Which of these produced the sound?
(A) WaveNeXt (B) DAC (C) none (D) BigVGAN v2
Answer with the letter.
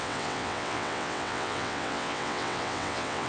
A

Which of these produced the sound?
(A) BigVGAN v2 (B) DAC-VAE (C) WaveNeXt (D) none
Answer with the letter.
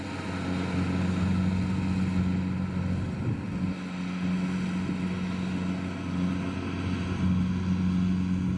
D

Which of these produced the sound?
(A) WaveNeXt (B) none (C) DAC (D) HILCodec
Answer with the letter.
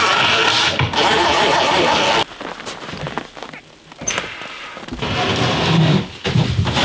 B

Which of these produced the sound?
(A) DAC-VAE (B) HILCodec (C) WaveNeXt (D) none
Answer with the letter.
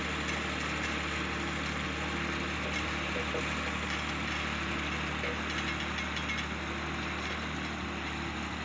D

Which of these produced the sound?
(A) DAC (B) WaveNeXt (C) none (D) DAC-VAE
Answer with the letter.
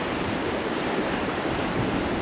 C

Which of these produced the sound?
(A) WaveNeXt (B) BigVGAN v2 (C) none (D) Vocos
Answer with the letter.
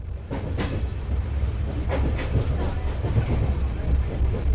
C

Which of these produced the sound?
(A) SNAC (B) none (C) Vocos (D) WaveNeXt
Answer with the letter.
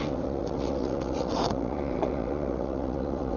D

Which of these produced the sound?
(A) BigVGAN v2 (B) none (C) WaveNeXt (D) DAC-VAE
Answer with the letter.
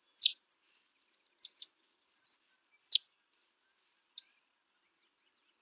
B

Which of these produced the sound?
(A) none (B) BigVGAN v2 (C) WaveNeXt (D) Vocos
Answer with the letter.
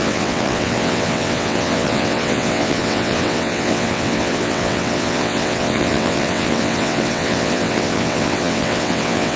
C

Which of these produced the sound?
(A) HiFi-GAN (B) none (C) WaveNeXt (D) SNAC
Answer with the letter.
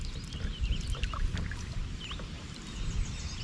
B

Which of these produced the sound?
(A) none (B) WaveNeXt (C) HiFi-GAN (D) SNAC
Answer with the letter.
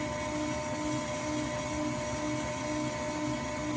A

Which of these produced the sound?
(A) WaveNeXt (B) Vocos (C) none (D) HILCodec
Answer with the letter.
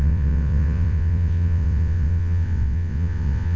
A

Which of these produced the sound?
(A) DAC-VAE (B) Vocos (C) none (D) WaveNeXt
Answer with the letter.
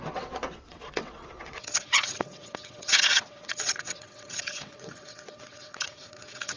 D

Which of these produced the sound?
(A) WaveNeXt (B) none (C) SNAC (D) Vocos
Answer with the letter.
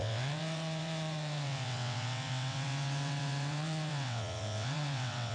A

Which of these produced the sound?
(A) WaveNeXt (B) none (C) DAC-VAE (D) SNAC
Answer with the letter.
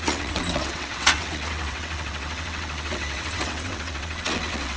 A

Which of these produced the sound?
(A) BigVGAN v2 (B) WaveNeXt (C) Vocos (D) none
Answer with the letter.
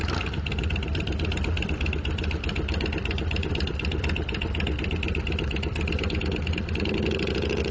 D